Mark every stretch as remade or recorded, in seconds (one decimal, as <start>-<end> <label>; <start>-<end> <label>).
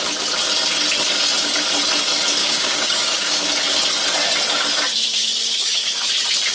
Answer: 0.0-2.4 recorded; 2.4-3.5 remade; 3.5-5.2 recorded; 5.2-6.1 remade; 6.1-6.5 recorded